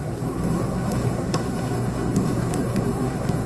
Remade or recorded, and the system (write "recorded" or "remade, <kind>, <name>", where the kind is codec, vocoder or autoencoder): remade, codec, SNAC